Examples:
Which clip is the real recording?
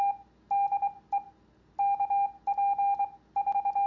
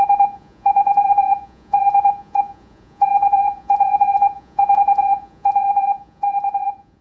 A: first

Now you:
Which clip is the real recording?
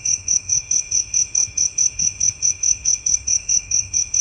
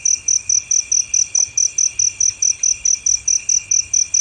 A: second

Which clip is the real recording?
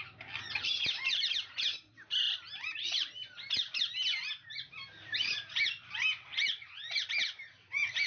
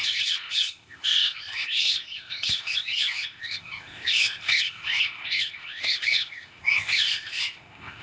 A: first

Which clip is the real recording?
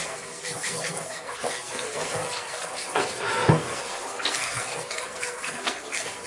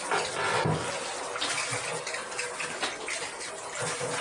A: second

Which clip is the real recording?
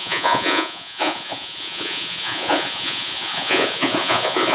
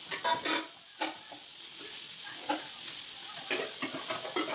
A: second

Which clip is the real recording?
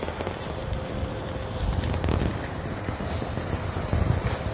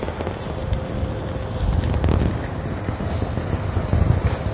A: second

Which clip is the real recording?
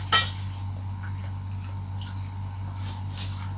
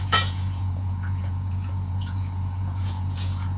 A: first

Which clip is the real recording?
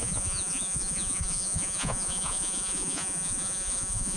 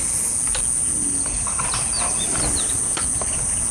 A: second